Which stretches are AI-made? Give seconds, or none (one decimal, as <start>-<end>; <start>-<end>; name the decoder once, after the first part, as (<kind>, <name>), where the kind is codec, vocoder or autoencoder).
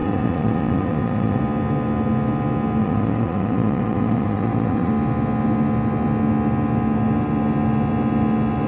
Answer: 0.0-1.4 (vocoder, Vocos); 2.8-4.9